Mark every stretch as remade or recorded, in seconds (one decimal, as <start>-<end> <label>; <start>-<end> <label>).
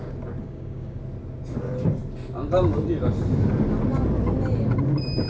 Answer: 0.0-0.4 recorded; 0.4-1.0 remade; 1.0-5.3 recorded